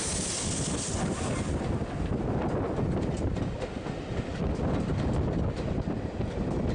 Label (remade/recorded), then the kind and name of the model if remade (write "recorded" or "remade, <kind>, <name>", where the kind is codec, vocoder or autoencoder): recorded